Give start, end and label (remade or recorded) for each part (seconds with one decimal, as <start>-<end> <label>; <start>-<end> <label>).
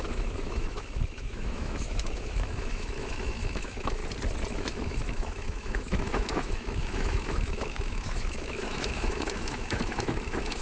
0.0-4.0 remade; 4.0-4.5 recorded; 4.5-10.6 remade